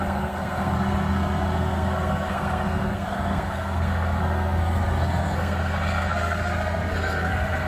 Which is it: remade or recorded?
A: remade